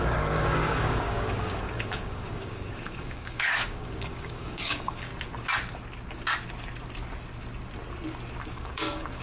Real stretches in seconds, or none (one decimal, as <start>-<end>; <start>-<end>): 5.1-8.5